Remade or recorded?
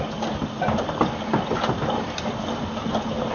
recorded